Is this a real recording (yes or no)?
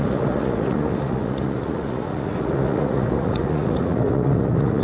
no